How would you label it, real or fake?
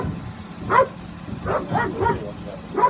real